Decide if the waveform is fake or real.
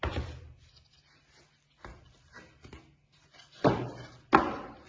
real